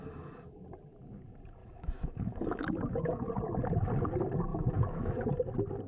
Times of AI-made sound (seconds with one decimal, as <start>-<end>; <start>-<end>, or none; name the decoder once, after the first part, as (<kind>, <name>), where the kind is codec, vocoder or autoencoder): 1.6-3.3 (autoencoder, DAC-VAE); 4.5-5.3